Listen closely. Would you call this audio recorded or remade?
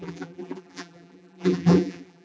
remade